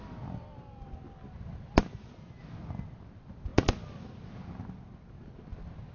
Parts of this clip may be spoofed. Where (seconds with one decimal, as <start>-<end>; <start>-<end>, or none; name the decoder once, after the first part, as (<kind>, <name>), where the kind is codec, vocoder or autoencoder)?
1.8-2.4 (vocoder, BigVGAN v2)